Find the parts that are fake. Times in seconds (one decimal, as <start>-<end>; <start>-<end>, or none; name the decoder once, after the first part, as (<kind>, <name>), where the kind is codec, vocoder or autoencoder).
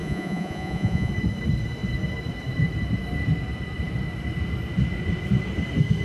0.0-1.1 (vocoder, Vocos)